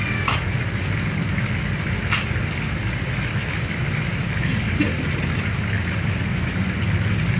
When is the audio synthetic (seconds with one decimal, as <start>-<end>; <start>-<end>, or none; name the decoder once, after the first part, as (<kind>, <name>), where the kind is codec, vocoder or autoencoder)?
6.3-6.8 (vocoder, Vocos)